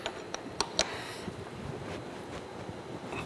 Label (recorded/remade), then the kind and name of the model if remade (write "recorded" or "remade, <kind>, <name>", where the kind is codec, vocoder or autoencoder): recorded